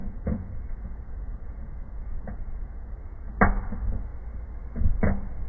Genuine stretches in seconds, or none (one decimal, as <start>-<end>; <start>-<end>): 3.3-5.5